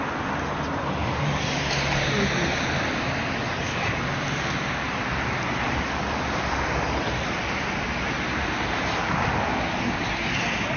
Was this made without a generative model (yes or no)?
yes